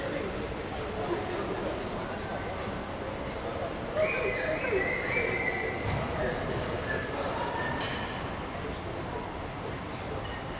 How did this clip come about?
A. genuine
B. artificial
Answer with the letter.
A